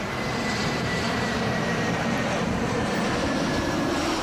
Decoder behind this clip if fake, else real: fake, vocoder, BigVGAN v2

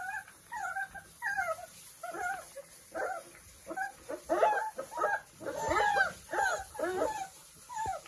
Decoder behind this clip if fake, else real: real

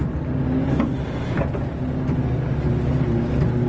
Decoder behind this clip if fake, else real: real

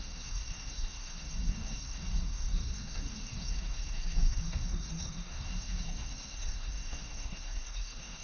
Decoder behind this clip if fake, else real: fake, codec, SNAC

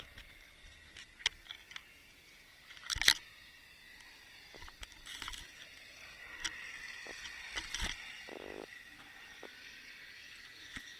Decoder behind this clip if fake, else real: real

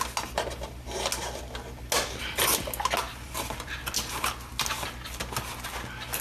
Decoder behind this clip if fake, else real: real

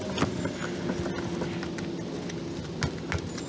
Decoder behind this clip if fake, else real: real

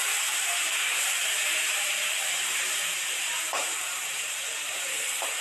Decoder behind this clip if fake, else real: fake, vocoder, BigVGAN v2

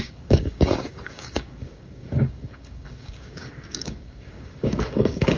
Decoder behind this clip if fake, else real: fake, codec, DAC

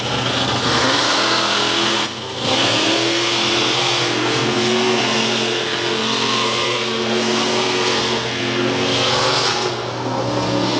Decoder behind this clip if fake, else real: fake, codec, SNAC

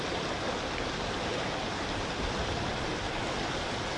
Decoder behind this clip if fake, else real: real